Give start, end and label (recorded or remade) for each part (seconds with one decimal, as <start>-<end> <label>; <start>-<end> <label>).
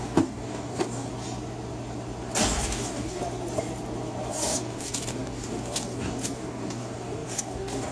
0.0-1.1 remade; 1.1-2.4 recorded; 2.4-3.2 remade; 3.2-4.3 recorded; 4.3-7.9 remade